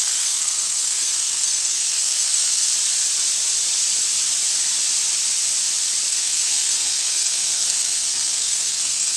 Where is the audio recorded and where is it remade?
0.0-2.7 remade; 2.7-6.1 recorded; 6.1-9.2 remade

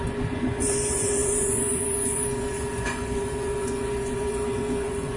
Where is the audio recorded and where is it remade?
0.0-5.2 remade

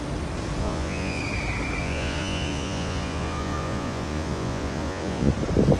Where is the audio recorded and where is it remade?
0.0-0.6 recorded; 0.6-1.2 remade; 1.2-1.8 recorded; 1.8-5.3 remade; 5.3-5.8 recorded